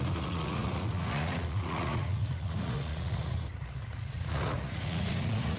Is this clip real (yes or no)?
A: no